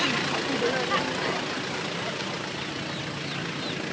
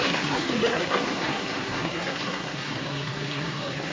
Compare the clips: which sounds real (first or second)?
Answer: first